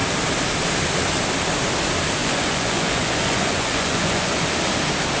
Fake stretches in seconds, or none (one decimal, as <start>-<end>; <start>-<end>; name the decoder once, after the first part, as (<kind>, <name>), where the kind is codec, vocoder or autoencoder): 2.2-4.5 (vocoder, Vocos)